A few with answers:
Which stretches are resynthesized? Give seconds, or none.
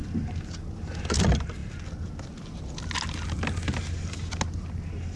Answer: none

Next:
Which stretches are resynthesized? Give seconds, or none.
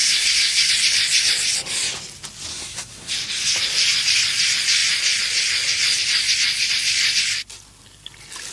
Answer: 0.0-0.7 (codec, SNAC); 2.5-3.1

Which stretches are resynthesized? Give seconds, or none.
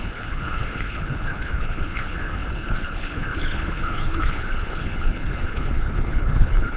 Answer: 0.0-6.8 (codec, HILCodec)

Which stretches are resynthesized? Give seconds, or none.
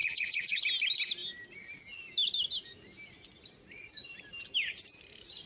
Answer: 0.0-0.6 (vocoder, Vocos)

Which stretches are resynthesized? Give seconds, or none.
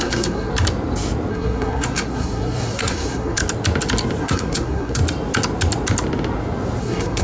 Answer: 0.0-0.5 (codec, SNAC); 1.3-3.4; 4.2-5.0; 6.8-7.2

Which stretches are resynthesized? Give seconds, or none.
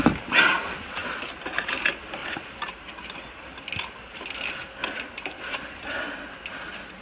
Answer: 2.2-4.7 (vocoder, BigVGAN v2)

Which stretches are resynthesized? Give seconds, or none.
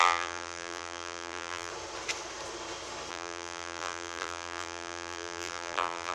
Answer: 0.0-1.7 (vocoder, BigVGAN v2); 3.1-6.1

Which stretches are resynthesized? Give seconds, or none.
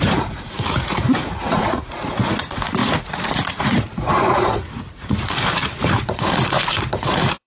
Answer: 0.0-7.5 (vocoder, Vocos)